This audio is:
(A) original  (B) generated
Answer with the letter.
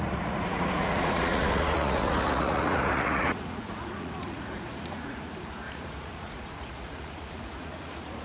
B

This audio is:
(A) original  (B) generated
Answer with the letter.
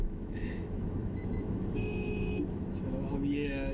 B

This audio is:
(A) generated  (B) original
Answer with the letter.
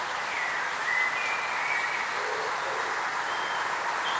B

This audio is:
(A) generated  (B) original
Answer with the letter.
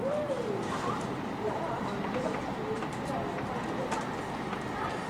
B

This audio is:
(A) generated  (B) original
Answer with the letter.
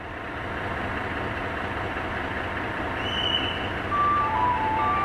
A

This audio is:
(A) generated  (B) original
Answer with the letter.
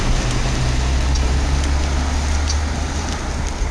B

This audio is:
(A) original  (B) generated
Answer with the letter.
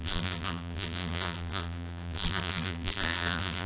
B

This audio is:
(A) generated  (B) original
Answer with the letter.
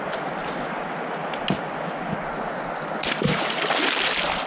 B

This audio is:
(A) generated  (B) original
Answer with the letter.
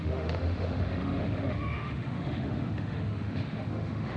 A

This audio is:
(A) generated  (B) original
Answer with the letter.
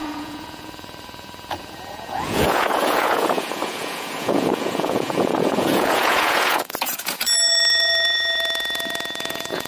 A